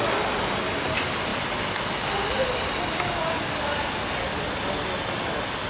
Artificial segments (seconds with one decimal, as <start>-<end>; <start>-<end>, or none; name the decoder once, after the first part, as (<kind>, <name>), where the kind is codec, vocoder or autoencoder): none